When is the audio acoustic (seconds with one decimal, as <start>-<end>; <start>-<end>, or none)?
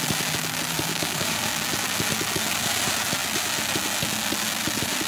0.0-0.9; 1.5-5.1